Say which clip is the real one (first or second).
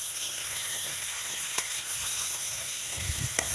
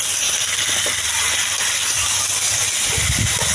second